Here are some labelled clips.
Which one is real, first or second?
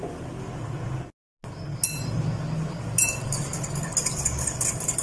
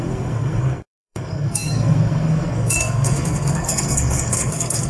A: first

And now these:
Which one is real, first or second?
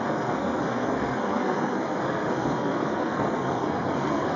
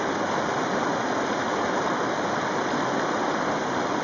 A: second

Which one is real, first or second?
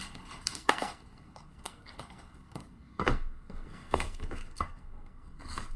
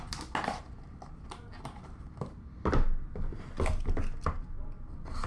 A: second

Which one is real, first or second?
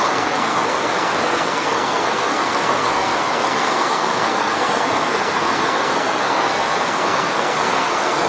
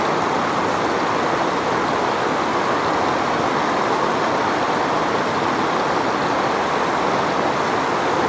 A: second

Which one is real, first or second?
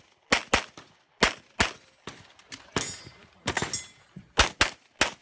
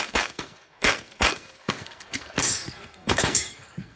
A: first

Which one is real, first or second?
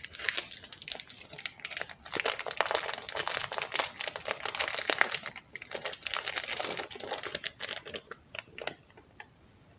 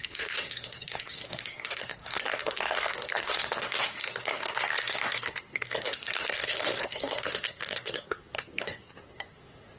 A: first